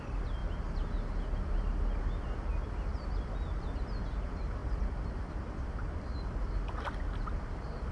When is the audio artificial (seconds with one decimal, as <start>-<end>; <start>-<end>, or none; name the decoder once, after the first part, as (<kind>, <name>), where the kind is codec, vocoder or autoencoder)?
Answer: none